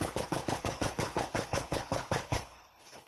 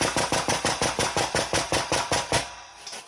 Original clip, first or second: second